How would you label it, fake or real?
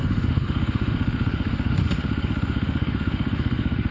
fake